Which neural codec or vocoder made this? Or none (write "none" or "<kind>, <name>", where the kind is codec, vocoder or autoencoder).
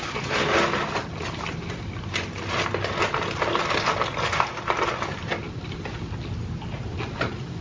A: none